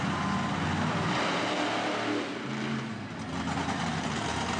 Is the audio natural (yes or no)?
yes